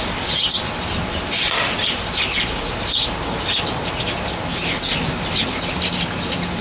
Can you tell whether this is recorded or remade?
recorded